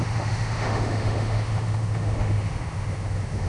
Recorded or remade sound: remade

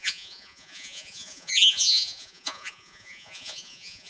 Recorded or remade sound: remade